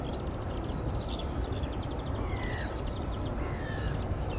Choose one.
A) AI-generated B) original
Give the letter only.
A